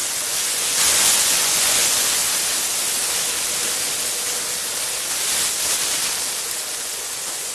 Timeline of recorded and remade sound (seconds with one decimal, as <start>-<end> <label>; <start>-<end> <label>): 0.0-2.2 remade; 2.2-6.7 recorded; 6.7-7.5 remade